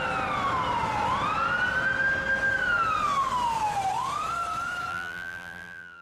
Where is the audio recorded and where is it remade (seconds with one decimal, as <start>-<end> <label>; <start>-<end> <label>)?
0.0-4.9 recorded; 4.9-6.0 remade